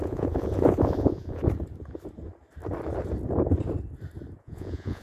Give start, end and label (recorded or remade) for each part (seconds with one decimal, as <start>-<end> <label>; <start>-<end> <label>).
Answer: 0.0-1.4 remade; 1.4-4.4 recorded; 4.4-5.0 remade